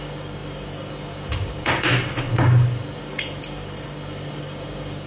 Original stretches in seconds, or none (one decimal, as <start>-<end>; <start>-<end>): none

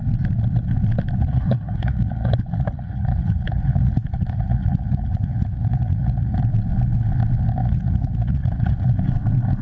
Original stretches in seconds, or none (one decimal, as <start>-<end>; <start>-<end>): 0.0-1.2; 6.4-7.6; 9.0-9.6

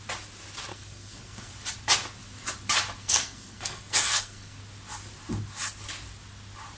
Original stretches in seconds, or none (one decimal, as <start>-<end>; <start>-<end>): 0.0-0.7; 1.5-3.0; 4.6-6.8

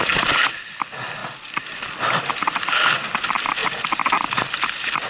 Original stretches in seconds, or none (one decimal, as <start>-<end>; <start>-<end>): 0.0-5.1